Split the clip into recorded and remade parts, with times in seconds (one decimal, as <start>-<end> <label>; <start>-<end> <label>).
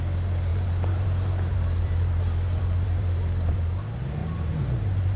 0.0-0.5 recorded; 0.5-3.6 remade; 3.6-4.2 recorded; 4.2-5.2 remade